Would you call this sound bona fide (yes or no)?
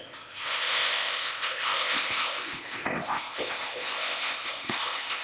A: no